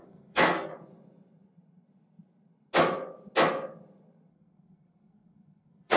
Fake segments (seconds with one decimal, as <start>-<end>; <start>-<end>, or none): 0.0-0.7; 4.3-6.0